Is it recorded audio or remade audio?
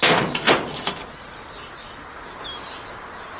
recorded